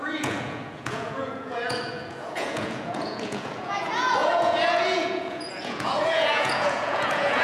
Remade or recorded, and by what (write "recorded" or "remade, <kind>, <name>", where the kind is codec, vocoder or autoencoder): remade, vocoder, Vocos